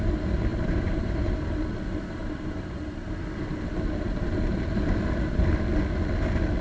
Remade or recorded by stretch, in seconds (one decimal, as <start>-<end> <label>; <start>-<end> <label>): 0.0-0.5 recorded; 0.5-1.3 remade; 1.3-2.2 recorded; 2.2-3.4 remade; 3.4-6.6 recorded